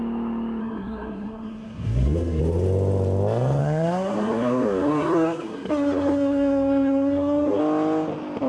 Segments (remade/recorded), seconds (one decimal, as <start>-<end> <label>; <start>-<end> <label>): 0.0-0.6 recorded; 0.6-2.4 remade; 2.4-3.6 recorded; 3.6-7.6 remade; 7.6-8.5 recorded